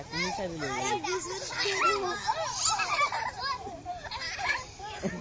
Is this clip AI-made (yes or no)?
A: no